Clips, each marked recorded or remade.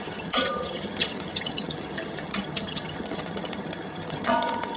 remade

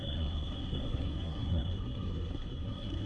remade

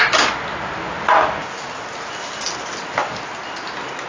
recorded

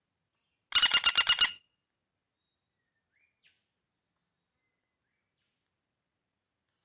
recorded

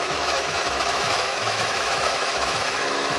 remade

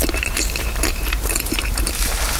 remade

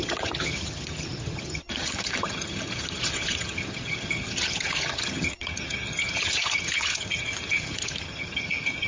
remade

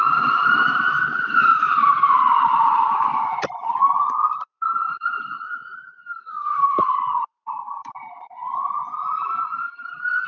remade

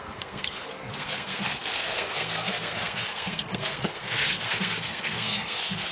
remade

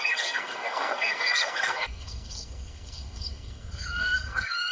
remade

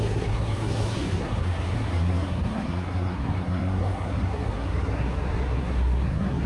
remade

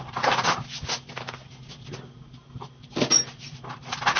recorded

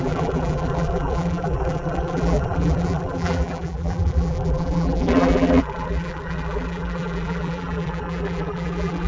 remade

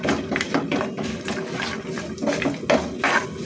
recorded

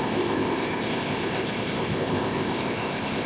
remade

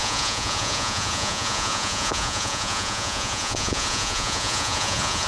remade